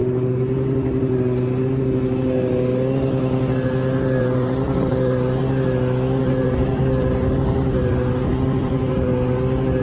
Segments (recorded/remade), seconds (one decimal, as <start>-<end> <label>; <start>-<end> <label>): 0.0-4.2 recorded; 4.2-5.4 remade; 5.4-6.2 recorded; 6.2-9.1 remade; 9.1-9.8 recorded